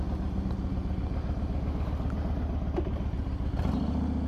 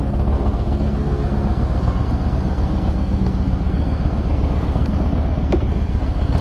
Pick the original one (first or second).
first